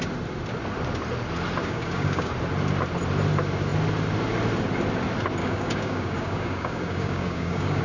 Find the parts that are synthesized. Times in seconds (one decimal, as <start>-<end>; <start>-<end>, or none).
1.6-2.3; 5.4-7.8